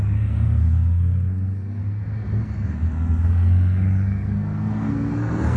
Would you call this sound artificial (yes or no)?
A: yes